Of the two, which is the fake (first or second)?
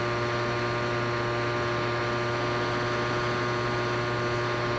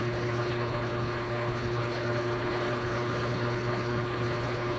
second